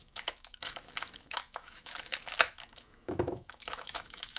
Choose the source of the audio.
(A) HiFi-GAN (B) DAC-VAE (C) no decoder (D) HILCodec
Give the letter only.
B